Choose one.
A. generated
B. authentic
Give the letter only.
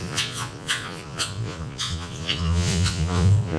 A